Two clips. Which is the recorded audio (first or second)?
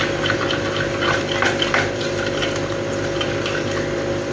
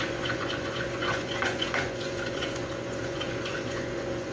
first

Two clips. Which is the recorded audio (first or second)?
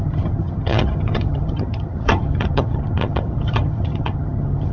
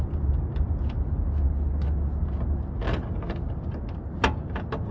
second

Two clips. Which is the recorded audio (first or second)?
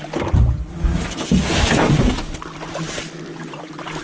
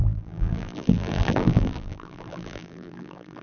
first